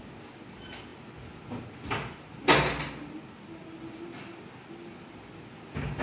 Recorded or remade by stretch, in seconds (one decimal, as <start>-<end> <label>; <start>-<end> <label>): 0.0-6.0 recorded